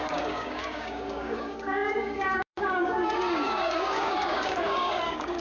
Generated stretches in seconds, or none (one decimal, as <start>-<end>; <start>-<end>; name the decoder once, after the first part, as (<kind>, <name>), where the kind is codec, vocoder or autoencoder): 0.0-5.4 (codec, DAC)